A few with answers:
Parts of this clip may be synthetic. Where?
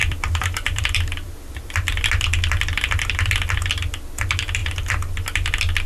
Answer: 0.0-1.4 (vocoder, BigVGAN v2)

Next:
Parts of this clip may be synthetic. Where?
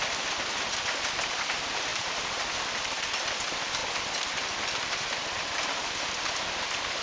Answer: 1.9-2.4 (vocoder, BigVGAN v2)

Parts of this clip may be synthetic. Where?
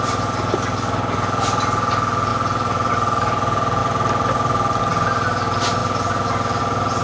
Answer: 2.3-2.9 (vocoder, BigVGAN v2); 3.8-4.8; 5.8-6.6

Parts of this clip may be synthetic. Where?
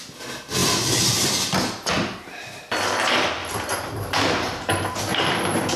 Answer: 0.6-1.3 (vocoder, BigVGAN v2); 3.4-4.6; 5.1-5.8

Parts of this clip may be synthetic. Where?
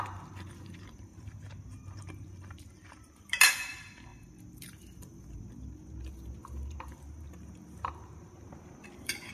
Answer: 0.0-1.1 (vocoder, BigVGAN v2); 1.8-9.3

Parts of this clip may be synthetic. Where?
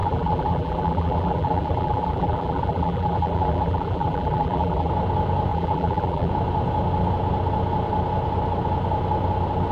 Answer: 0.0-4.9 (vocoder, BigVGAN v2); 5.5-6.3